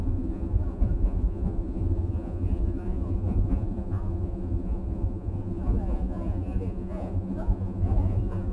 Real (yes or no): no